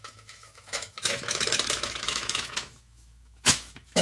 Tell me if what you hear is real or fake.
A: fake